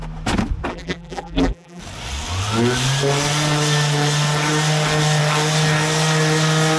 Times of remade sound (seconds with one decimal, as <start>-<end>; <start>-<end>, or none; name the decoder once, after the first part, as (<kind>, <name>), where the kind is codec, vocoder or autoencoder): 0.7-1.8 (vocoder, BigVGAN v2)